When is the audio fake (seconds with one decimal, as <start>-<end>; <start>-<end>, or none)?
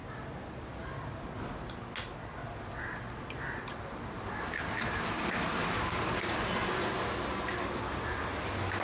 0.0-1.3